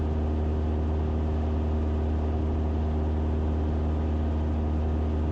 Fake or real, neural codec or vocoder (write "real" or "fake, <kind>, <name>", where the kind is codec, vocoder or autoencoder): real